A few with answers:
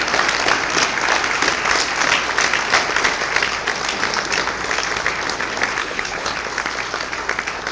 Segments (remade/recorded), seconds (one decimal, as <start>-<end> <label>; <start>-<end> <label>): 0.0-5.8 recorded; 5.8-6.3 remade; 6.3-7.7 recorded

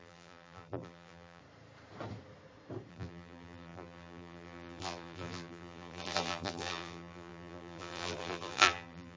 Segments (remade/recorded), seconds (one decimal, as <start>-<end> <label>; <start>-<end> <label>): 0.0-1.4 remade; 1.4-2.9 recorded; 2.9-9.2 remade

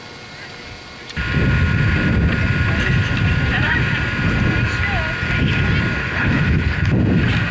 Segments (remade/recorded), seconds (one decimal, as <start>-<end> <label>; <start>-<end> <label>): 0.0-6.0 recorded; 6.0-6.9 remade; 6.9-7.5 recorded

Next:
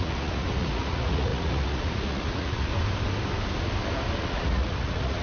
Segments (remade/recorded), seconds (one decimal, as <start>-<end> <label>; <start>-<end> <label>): 0.0-2.7 remade; 2.7-4.2 recorded; 4.2-5.2 remade